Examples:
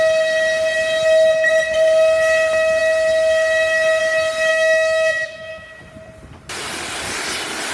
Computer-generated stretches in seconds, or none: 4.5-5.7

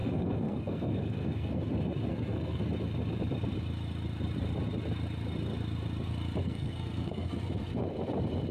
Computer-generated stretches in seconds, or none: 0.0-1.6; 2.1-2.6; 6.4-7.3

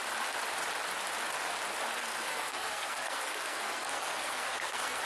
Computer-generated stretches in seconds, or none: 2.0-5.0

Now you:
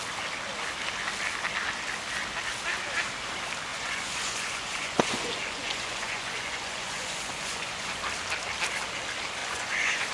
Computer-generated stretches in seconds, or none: 3.7-8.0; 9.4-10.1

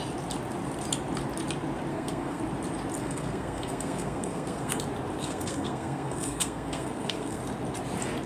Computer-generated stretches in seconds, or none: 1.9-2.4; 3.0-4.8; 5.2-7.4

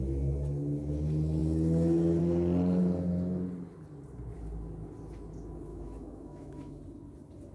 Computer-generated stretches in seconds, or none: 5.7-6.8